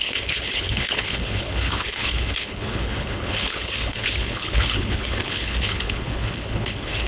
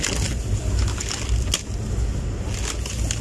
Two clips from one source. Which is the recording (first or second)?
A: second